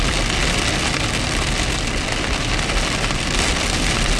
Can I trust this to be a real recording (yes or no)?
yes